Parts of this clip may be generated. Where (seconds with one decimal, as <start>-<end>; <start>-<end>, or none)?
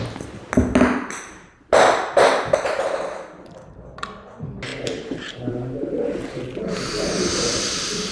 none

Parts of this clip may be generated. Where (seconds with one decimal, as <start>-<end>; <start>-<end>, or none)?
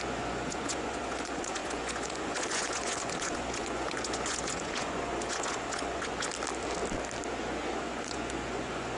0.0-6.3; 7.4-9.0